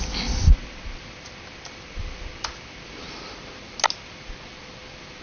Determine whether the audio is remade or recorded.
recorded